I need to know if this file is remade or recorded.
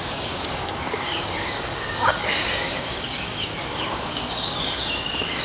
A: remade